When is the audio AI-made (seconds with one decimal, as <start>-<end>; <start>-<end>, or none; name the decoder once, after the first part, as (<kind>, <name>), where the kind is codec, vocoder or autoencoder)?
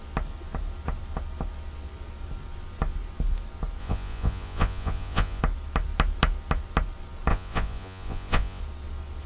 3.8-5.4 (vocoder, Vocos); 7.3-8.6